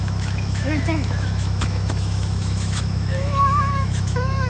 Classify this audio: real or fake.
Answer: fake